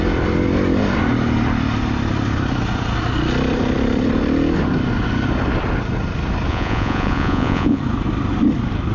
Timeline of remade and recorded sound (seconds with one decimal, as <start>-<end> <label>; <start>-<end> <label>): 0.0-6.5 recorded; 6.5-7.8 remade; 7.8-8.9 recorded